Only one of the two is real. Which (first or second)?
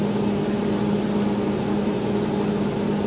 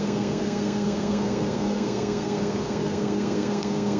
first